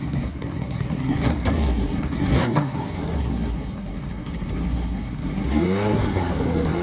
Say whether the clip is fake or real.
fake